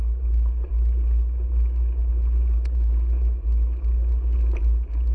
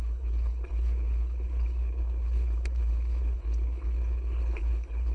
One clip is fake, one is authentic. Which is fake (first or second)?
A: second